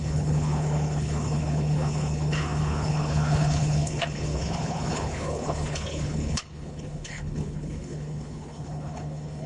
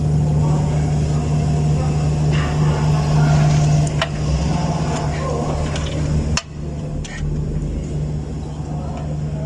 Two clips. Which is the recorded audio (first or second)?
second